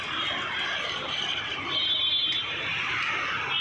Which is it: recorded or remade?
recorded